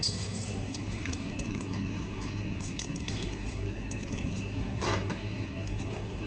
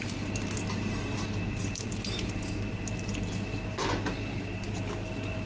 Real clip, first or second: second